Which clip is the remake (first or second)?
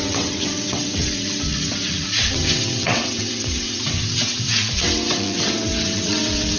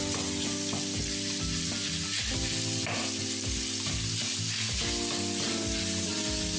first